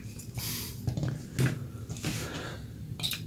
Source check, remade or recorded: recorded